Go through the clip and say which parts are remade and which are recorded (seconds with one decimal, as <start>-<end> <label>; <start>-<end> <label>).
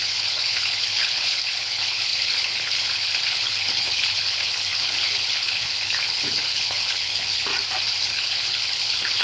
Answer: 0.0-7.5 remade; 7.5-8.0 recorded; 8.0-9.2 remade